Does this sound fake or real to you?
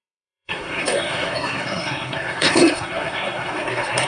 fake